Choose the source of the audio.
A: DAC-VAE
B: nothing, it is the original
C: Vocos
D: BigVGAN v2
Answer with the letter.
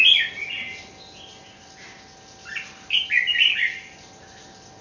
B